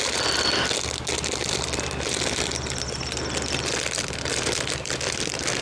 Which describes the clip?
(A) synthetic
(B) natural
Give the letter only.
B